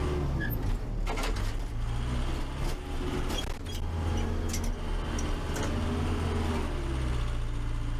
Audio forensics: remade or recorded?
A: recorded